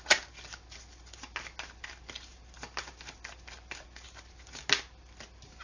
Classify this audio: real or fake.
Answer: real